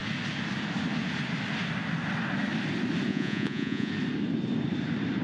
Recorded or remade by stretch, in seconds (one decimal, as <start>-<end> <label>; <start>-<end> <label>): 0.0-3.1 recorded; 3.1-3.9 remade; 3.9-5.2 recorded